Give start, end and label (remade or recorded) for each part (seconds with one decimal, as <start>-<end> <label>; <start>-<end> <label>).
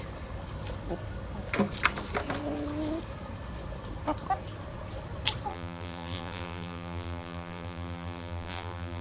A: 0.0-5.5 recorded; 5.5-9.0 remade